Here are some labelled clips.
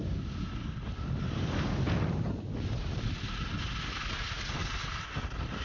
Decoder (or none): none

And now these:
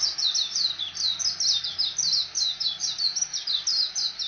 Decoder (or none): none